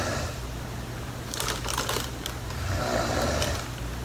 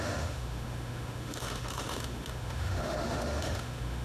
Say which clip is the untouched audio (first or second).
first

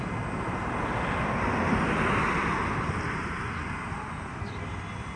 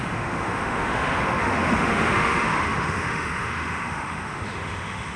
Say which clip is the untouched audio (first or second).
first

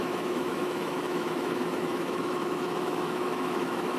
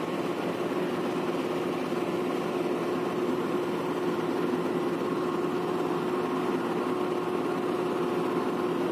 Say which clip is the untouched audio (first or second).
second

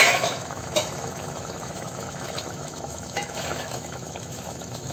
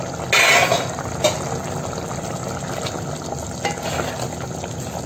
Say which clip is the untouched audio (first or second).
second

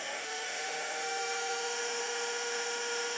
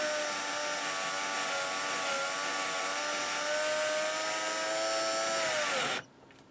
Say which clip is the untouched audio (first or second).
second